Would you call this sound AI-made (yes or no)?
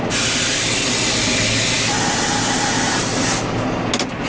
no